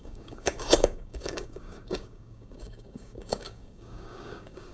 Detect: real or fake fake